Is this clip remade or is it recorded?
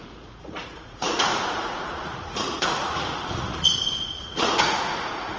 remade